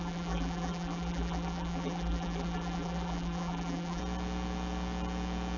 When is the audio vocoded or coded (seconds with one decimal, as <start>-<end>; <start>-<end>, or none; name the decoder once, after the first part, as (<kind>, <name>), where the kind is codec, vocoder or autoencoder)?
0.0-4.0 (vocoder, BigVGAN v2)